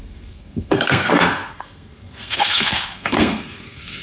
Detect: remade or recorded remade